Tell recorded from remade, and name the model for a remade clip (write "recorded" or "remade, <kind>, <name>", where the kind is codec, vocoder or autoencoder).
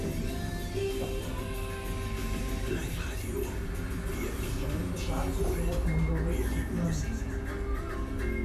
recorded